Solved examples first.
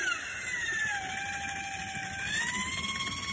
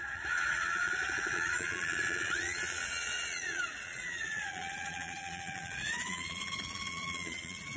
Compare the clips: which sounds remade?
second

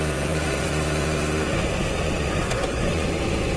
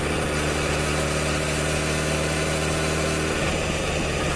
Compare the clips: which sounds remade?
first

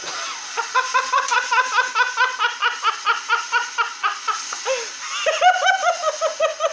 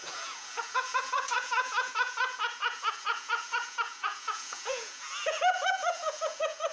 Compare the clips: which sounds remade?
second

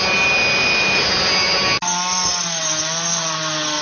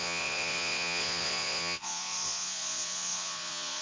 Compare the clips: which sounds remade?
second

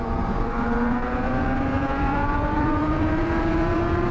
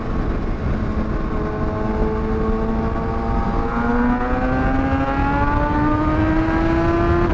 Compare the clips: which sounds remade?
first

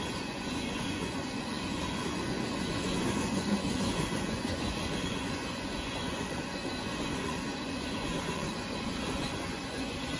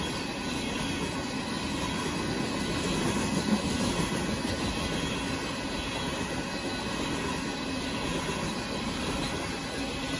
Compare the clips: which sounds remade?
first